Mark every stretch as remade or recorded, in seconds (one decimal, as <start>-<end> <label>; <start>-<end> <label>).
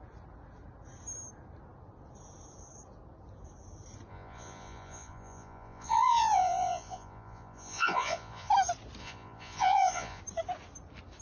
0.0-4.1 recorded; 4.1-8.5 remade; 8.5-9.0 recorded; 9.0-10.2 remade; 10.2-11.2 recorded